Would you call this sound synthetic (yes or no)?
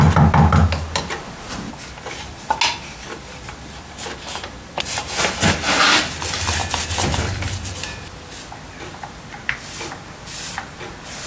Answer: no